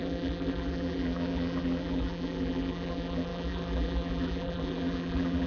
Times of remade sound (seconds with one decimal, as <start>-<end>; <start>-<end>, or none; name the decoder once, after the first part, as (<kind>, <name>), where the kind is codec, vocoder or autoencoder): 0.0-5.5 (vocoder, BigVGAN v2)